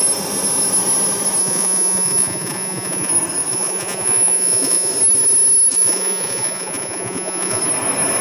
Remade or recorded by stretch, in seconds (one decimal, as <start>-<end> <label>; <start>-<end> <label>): 0.0-1.4 recorded; 1.4-3.1 remade; 3.1-3.5 recorded; 3.5-4.9 remade; 4.9-5.7 recorded; 5.7-7.6 remade; 7.6-8.2 recorded